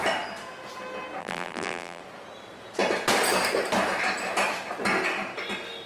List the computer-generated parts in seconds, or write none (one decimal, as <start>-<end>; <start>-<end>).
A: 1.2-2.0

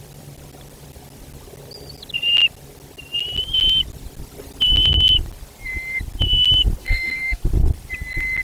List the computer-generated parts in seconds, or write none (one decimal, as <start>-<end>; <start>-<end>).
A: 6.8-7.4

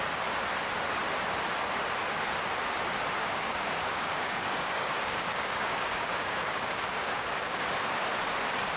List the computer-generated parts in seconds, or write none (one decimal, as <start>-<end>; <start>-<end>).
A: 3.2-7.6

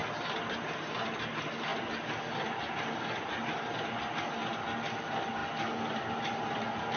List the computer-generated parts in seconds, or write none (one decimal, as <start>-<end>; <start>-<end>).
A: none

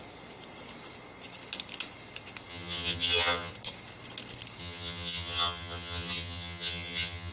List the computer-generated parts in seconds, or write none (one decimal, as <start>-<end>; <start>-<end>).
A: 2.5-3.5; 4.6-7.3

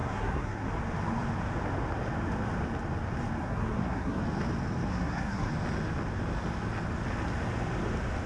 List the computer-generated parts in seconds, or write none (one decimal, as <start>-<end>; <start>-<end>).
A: 0.0-0.7; 3.4-4.2; 4.9-5.5

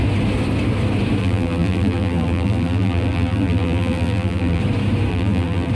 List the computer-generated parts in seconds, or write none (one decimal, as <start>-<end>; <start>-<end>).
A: 1.2-4.6; 5.1-5.7

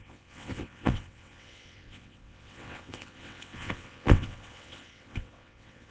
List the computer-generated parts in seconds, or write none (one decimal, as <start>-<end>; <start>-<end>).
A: 0.0-5.9